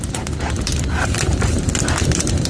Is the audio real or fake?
fake